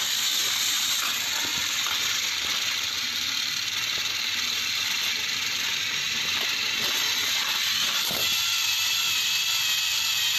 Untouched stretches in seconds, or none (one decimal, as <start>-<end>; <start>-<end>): none